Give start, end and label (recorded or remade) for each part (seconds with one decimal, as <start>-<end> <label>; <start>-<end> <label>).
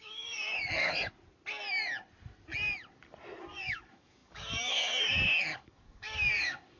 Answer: 0.0-0.9 remade; 0.9-3.5 recorded; 3.5-6.8 remade